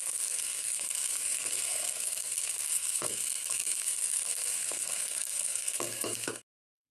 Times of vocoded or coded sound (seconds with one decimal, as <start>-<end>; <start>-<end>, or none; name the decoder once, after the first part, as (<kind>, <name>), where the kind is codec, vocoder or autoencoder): 0.0-6.9 (codec, SNAC)